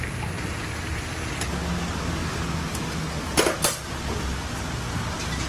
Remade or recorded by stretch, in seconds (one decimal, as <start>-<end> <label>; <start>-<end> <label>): 0.0-5.5 recorded